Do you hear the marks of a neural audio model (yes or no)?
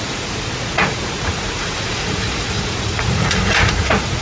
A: yes